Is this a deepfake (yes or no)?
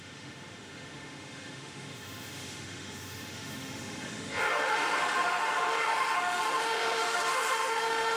yes